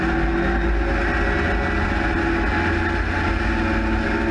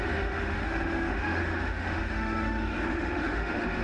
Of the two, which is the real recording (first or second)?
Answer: first